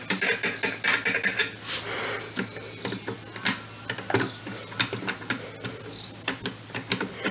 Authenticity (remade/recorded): recorded